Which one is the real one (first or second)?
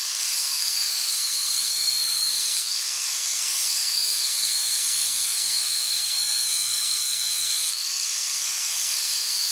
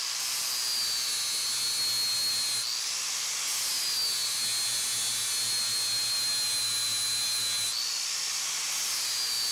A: second